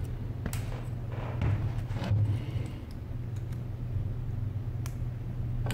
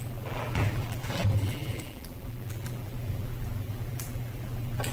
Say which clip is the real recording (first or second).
first